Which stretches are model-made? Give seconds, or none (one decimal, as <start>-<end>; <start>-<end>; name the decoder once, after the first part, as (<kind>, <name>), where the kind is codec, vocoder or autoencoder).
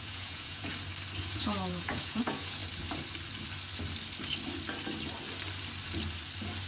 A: 0.0-0.7 (vocoder, Vocos); 1.2-2.6